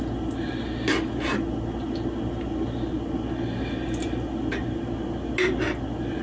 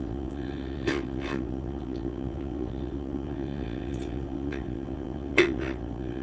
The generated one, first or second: second